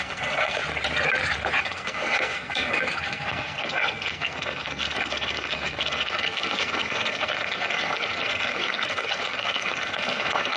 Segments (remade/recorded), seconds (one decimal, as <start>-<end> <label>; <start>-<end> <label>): 0.0-0.6 remade; 0.6-1.6 recorded; 1.6-10.6 remade